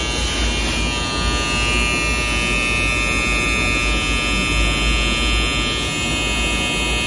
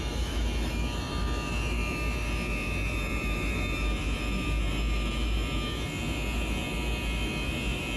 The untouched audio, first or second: first